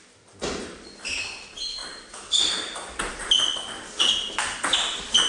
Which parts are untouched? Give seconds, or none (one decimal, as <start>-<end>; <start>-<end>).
0.0-5.3